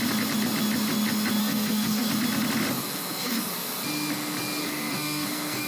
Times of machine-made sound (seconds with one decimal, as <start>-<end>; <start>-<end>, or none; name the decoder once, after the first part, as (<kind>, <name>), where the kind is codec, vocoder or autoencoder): 1.4-2.1 (codec, SNAC); 2.8-3.5; 4.6-5.7